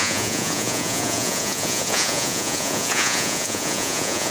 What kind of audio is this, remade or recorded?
remade